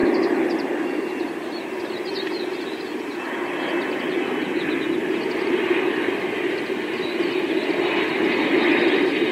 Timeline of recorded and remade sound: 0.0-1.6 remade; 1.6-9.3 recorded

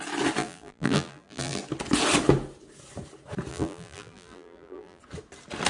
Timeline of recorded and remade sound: 0.0-0.4 recorded; 0.4-1.6 remade; 1.6-3.5 recorded; 3.5-5.0 remade; 5.0-5.7 recorded

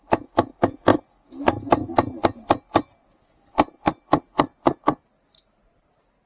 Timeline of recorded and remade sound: 0.0-6.3 recorded